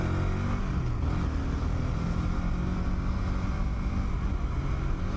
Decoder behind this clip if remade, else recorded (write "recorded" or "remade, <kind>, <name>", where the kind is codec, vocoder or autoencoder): recorded